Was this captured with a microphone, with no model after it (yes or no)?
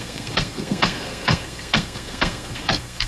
no